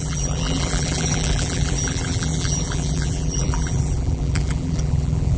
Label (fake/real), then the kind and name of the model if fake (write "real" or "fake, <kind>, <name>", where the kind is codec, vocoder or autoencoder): fake, vocoder, BigVGAN v2